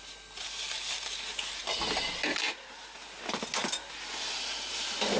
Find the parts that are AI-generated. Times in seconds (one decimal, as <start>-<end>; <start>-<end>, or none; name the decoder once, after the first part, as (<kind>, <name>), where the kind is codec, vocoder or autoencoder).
none